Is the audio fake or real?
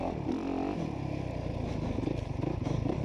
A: real